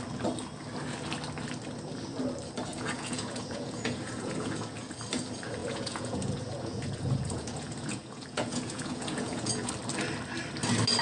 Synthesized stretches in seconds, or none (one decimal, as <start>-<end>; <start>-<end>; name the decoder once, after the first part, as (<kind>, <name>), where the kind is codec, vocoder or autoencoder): 2.7-4.9 (vocoder, Vocos); 5.6-9.7